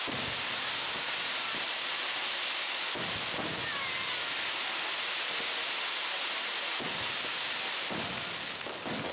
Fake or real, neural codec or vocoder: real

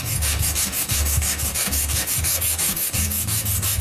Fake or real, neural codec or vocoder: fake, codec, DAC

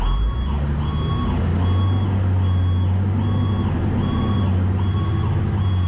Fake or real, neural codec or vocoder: real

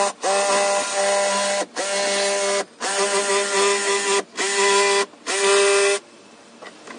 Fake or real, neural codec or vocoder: real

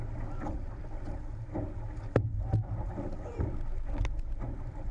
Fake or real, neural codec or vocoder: real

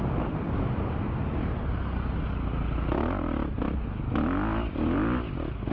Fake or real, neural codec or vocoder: real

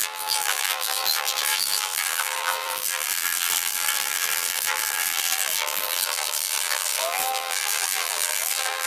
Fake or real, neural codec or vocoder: fake, vocoder, BigVGAN v2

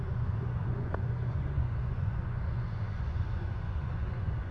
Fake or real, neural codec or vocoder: fake, vocoder, Vocos